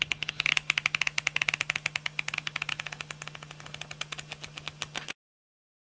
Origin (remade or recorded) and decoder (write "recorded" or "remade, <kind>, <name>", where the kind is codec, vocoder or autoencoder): recorded